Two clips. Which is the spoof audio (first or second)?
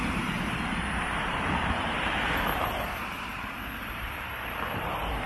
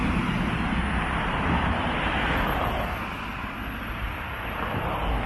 first